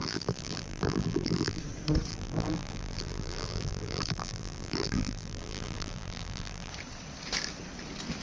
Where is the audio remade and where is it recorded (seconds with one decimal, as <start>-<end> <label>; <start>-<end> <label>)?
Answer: 0.0-1.6 remade; 1.6-2.1 recorded; 2.1-6.7 remade; 6.7-8.2 recorded